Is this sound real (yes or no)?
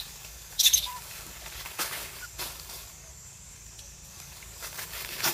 no